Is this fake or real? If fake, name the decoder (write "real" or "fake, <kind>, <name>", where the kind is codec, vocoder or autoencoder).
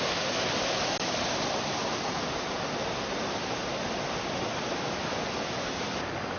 real